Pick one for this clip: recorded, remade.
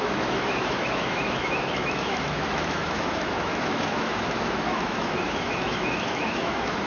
remade